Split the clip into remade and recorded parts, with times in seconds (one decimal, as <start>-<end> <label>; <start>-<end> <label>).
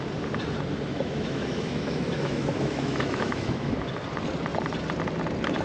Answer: 0.0-0.9 recorded; 0.9-3.7 remade; 3.7-5.6 recorded